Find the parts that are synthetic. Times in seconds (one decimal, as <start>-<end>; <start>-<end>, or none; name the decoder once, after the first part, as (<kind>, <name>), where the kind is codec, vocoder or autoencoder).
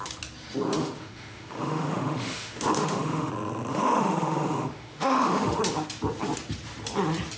0.8-3.3 (autoencoder, DAC-VAE); 3.7-5.6